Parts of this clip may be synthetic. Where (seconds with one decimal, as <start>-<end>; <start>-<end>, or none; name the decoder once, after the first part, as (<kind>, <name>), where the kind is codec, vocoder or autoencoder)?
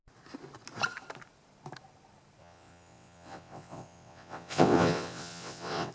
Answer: 2.4-5.9 (vocoder, WaveNeXt)